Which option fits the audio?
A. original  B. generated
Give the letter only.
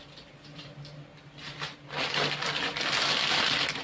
A